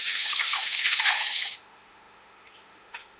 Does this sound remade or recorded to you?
remade